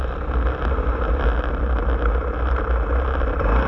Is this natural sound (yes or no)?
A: yes